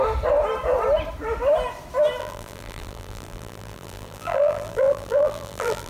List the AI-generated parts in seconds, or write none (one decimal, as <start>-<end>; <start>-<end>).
2.2-5.9

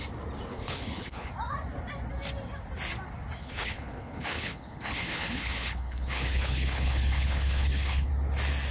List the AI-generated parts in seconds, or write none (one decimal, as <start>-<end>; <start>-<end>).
0.5-1.3; 3.4-8.1

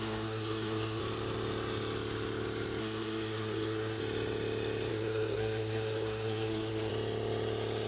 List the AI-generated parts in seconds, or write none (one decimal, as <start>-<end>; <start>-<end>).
0.0-1.0; 2.8-4.0; 4.9-6.9

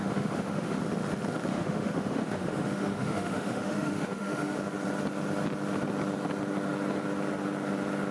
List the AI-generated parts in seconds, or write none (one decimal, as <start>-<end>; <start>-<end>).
0.0-0.8; 1.5-4.6